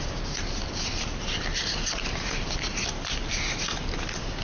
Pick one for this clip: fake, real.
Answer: real